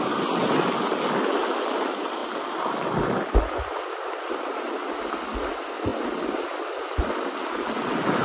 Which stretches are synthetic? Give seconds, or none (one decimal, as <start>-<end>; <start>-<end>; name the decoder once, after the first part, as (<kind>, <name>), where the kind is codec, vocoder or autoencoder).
none